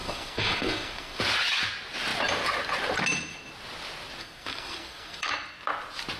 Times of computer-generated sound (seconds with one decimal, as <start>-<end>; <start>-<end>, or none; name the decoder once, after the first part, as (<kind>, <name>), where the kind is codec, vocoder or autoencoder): 0.0-1.2 (codec, SNAC); 4.2-5.3